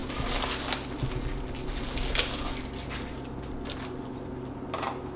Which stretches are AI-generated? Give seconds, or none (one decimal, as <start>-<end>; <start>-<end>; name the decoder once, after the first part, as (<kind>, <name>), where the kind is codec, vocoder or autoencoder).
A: none